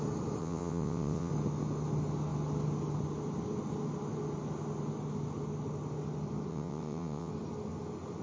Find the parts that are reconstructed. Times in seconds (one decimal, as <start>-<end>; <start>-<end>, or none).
0.4-1.3; 6.5-7.3